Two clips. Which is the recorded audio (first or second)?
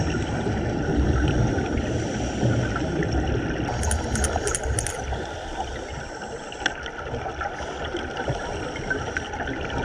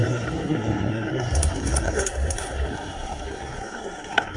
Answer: first